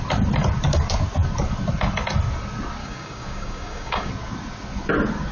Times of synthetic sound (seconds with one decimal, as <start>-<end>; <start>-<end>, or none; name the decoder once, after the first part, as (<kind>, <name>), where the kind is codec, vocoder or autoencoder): 2.8-4.1 (codec, DAC)